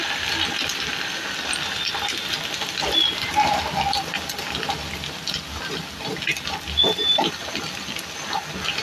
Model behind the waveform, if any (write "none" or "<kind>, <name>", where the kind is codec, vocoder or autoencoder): none